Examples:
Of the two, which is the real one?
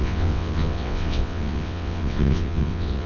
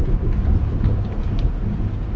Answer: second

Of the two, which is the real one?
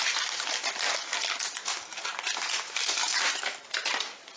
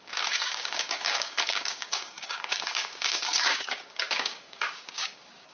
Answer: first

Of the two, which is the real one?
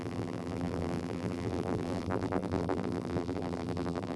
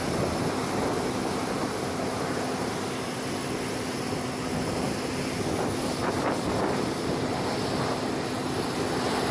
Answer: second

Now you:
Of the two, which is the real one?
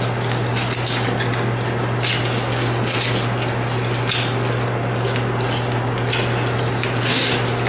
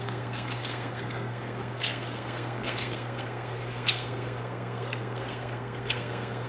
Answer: first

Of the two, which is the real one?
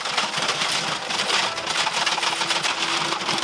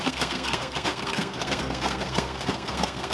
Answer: first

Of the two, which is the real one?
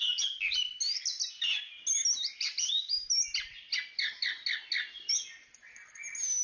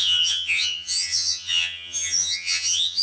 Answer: first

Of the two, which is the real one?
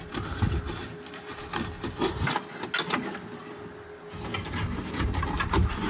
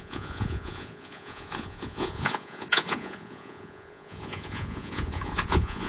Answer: first